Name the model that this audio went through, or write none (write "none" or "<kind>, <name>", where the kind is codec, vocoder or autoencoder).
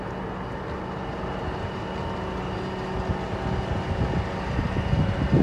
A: none